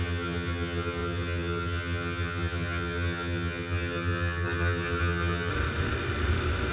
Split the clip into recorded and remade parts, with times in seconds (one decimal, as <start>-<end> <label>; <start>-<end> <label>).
0.0-5.5 remade; 5.5-6.7 recorded